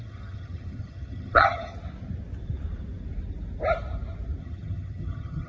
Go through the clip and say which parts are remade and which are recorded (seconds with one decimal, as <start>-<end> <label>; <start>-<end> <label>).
0.0-1.7 remade; 1.7-4.4 recorded; 4.4-5.5 remade